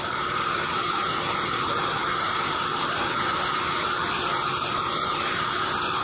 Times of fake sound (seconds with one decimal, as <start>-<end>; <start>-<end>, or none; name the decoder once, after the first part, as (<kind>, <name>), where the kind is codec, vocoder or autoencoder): none